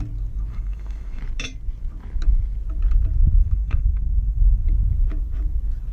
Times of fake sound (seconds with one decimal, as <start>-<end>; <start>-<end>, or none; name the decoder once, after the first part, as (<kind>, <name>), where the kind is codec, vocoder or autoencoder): 0.5-1.2 (codec, SNAC); 3.4-4.6